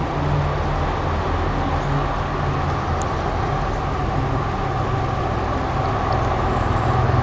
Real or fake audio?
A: real